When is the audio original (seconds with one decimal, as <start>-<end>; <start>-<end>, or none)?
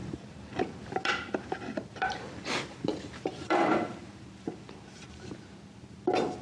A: 1.1-1.9; 5.4-6.4